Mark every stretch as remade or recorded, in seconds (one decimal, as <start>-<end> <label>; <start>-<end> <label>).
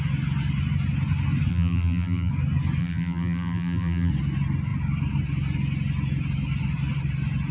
0.0-1.5 recorded; 1.5-2.3 remade; 2.3-2.8 recorded; 2.8-4.1 remade; 4.1-7.5 recorded